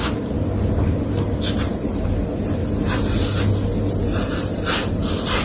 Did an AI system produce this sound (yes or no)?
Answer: no